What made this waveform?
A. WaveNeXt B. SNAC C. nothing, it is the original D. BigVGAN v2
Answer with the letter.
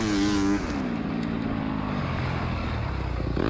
C